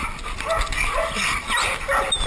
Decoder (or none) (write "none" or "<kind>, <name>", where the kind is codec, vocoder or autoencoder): none